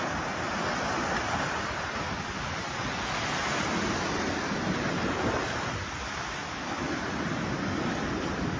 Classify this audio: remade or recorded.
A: recorded